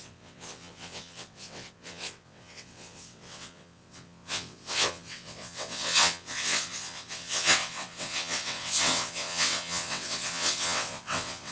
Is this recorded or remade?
remade